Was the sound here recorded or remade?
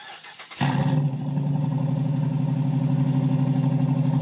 recorded